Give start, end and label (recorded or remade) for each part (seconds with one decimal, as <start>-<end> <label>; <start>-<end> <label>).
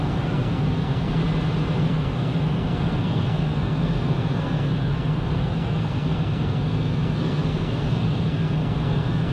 0.0-1.2 remade; 1.2-1.8 recorded; 1.8-9.3 remade